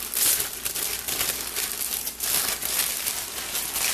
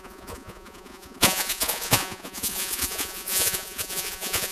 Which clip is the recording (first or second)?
first